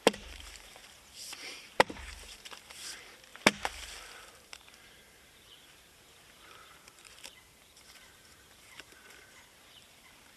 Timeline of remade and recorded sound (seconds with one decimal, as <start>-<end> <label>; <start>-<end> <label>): 0.0-3.3 remade; 3.3-4.4 recorded; 4.4-10.4 remade